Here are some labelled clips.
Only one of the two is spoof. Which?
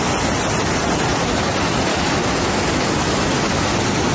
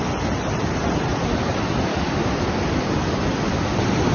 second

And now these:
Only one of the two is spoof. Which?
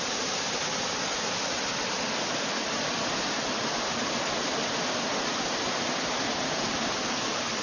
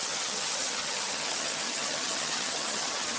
second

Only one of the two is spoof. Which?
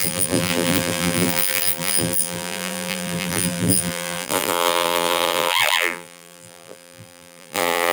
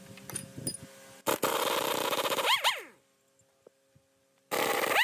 first